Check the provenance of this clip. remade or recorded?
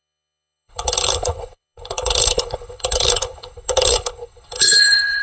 remade